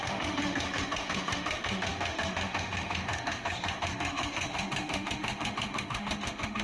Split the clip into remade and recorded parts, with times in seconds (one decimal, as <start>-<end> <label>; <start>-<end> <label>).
0.0-6.6 remade